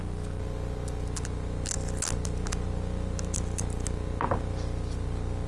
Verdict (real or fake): real